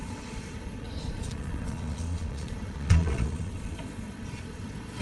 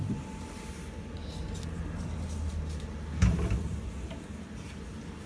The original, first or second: second